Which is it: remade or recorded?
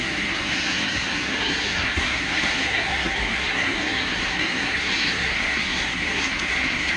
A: remade